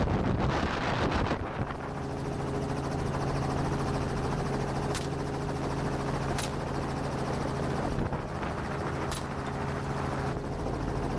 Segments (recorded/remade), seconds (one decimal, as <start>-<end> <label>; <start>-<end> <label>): 0.0-11.2 recorded

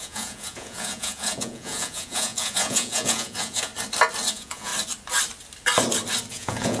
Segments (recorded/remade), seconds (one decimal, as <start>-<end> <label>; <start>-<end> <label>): 0.0-3.7 remade; 3.7-4.3 recorded; 4.3-4.7 remade; 4.7-6.3 recorded; 6.3-6.8 remade

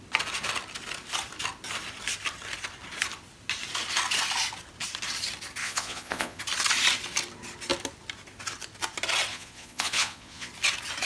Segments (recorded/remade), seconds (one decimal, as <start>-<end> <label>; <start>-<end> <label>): 0.0-5.6 recorded; 5.6-6.4 remade; 6.4-9.3 recorded; 9.3-10.5 remade; 10.5-11.1 recorded

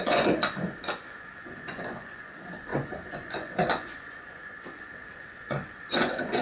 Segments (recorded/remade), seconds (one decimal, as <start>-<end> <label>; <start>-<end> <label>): 0.0-6.4 remade

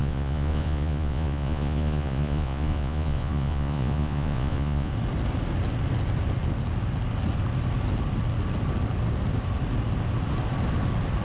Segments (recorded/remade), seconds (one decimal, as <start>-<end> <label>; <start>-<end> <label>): 0.0-4.9 remade; 4.9-11.2 recorded

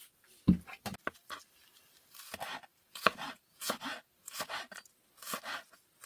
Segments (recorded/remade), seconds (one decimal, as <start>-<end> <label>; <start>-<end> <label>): 0.0-2.7 recorded; 2.7-4.4 remade; 4.4-6.1 recorded

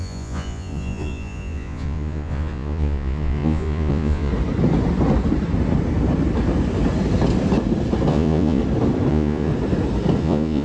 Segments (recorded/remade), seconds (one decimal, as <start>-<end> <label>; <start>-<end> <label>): 0.0-4.3 remade; 4.3-8.1 recorded; 8.1-8.6 remade; 8.6-9.1 recorded; 9.1-9.5 remade; 9.5-10.2 recorded; 10.2-10.6 remade